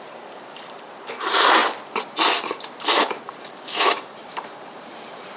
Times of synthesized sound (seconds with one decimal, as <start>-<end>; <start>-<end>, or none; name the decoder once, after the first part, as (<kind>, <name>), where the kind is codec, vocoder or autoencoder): 0.0-1.6 (vocoder, BigVGAN v2); 3.3-5.4